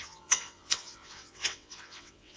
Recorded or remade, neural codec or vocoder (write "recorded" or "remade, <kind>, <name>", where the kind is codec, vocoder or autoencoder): remade, vocoder, WaveNeXt